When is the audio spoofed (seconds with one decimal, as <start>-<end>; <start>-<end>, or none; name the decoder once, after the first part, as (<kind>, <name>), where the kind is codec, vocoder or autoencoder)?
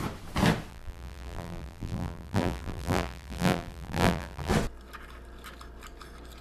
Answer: 0.7-4.5 (vocoder, BigVGAN v2)